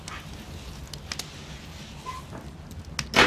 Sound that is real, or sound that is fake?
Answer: real